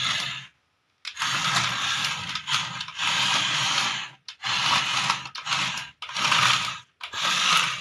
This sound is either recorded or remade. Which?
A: recorded